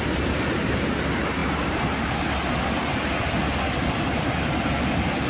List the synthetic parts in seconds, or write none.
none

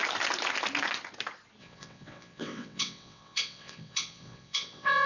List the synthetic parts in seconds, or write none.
1.6-5.1 (vocoder, WaveNeXt)

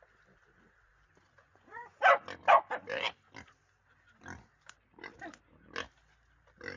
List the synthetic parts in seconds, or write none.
1.4-2.0 (vocoder, Vocos)

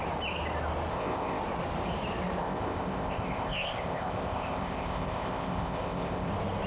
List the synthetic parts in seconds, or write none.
0.9-1.4 (codec, ZipCodec); 2.4-6.3

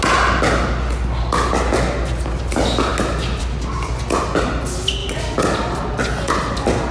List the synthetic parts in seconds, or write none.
none

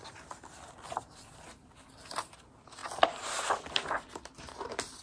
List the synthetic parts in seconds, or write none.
none

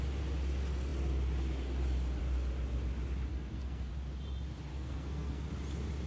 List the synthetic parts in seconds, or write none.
3.3-3.9 (codec, SNAC); 4.7-5.5